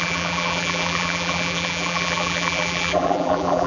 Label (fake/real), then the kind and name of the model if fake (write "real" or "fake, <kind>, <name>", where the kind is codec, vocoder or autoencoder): fake, vocoder, BigVGAN v2